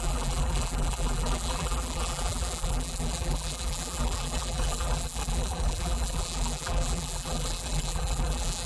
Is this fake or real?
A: fake